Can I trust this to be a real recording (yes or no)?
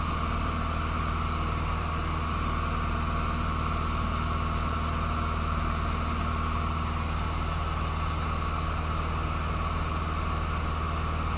yes